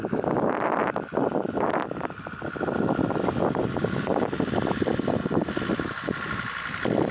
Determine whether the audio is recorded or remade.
recorded